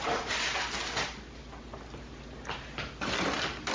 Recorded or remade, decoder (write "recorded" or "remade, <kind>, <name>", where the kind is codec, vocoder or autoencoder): recorded